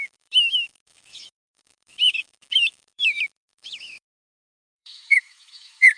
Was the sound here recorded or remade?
remade